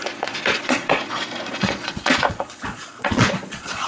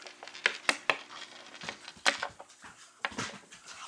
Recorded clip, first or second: second